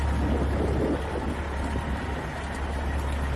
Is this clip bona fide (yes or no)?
yes